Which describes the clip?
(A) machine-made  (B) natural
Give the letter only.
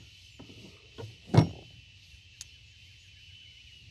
B